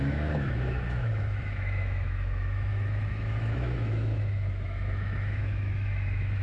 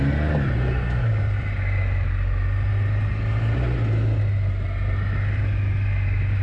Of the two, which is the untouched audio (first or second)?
second